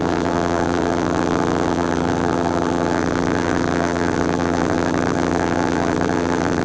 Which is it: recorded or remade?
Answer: remade